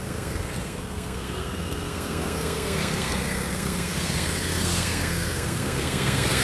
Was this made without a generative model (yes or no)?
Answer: no